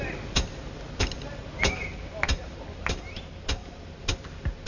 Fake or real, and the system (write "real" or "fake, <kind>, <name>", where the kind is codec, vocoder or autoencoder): real